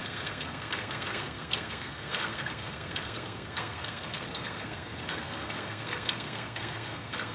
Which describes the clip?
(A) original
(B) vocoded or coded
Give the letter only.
B